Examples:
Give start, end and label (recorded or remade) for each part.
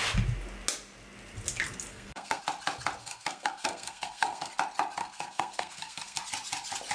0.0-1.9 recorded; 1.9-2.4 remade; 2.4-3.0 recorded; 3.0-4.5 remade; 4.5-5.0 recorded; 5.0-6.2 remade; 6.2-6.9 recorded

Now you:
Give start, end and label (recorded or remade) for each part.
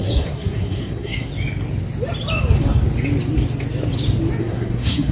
0.0-1.3 remade; 1.3-4.4 recorded; 4.4-5.1 remade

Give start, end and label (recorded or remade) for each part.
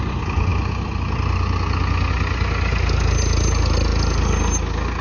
0.0-5.0 recorded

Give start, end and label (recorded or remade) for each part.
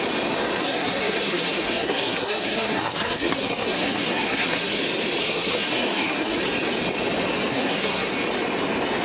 0.0-0.6 recorded; 0.6-4.8 remade; 4.8-5.2 recorded; 5.2-6.4 remade; 6.4-7.5 recorded; 7.5-8.1 remade; 8.1-9.0 recorded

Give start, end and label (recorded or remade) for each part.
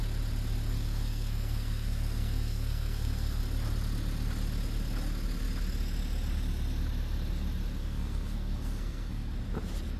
0.0-0.7 recorded; 0.7-3.4 remade; 3.4-7.8 recorded; 7.8-9.3 remade; 9.3-10.0 recorded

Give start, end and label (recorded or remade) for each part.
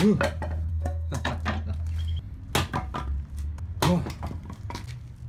0.0-0.7 recorded; 0.7-1.3 remade; 1.3-5.3 recorded